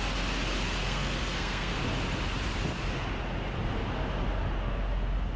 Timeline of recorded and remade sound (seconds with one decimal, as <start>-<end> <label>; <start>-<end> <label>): 0.0-0.8 recorded; 0.8-1.7 remade; 1.7-5.4 recorded

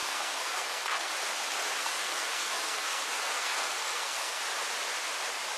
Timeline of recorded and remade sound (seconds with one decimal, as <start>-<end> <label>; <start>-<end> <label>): 0.0-1.1 remade; 1.1-1.8 recorded; 1.8-4.4 remade; 4.4-5.6 recorded

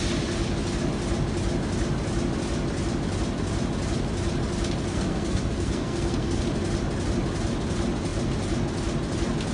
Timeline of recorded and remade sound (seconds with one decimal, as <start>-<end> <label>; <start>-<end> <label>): 0.0-4.9 recorded; 4.9-6.4 remade; 6.4-9.5 recorded